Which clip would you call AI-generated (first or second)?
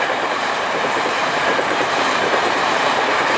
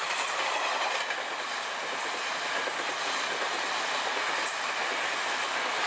first